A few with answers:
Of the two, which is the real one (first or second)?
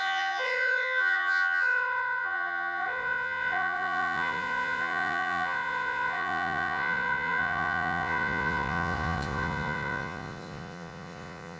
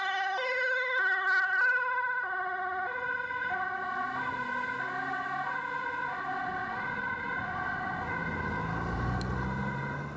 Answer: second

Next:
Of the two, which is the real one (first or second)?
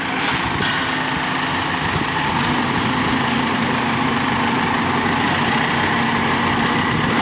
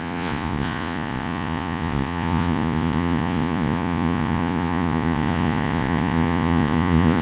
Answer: first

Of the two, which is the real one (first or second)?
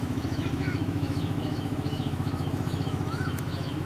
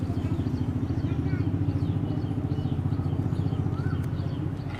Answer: second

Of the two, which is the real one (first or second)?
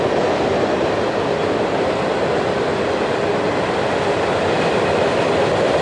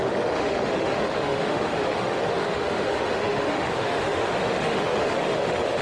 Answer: first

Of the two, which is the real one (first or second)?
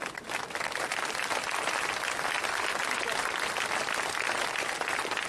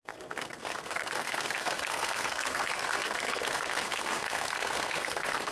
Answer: first